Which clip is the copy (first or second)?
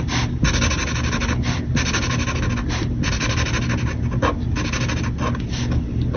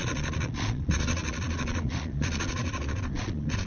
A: second